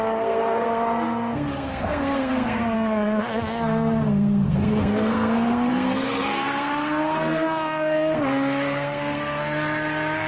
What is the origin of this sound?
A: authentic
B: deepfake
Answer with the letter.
B